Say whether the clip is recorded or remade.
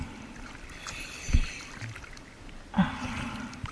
recorded